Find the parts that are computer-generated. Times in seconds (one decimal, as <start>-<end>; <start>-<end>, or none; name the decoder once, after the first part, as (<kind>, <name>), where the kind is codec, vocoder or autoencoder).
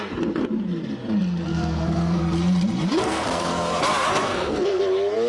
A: 1.5-2.2 (codec, SNAC); 3.0-3.8; 4.2-4.8